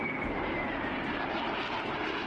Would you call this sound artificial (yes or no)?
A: no